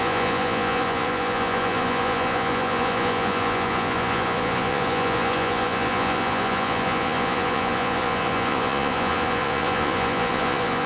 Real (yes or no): no